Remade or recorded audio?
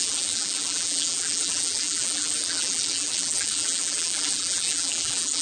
remade